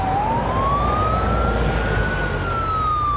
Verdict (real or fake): real